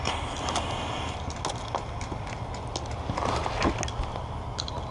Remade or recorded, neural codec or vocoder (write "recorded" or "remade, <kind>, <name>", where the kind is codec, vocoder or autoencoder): recorded